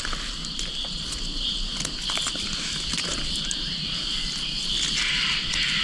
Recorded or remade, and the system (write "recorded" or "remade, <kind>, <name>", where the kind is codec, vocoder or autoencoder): recorded